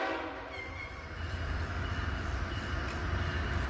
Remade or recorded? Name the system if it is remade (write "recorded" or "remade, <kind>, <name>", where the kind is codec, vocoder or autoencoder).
recorded